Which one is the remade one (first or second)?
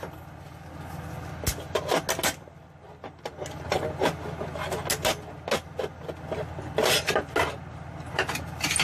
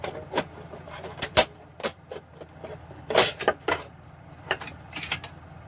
second